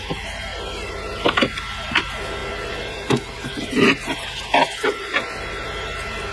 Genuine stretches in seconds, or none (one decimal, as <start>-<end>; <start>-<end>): 0.0-6.3